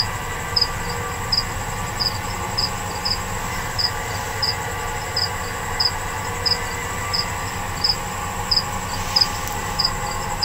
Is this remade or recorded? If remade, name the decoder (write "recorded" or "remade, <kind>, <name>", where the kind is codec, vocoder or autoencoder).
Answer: recorded